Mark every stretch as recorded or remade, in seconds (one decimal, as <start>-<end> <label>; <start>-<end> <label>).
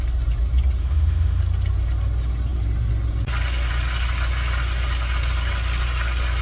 0.0-0.8 recorded; 0.8-1.4 remade; 1.4-6.4 recorded